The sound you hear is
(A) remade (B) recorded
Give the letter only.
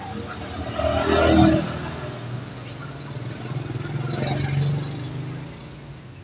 B